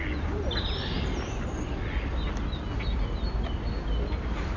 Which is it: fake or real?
real